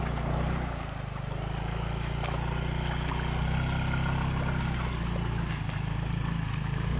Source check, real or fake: real